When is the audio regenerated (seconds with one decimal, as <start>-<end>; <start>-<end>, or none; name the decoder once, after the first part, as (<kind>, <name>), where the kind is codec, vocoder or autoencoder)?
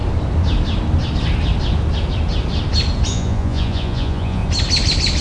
3.1-4.4 (vocoder, Vocos)